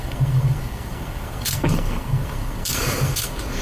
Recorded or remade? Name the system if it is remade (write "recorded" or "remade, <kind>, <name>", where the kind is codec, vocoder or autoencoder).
remade, codec, SNAC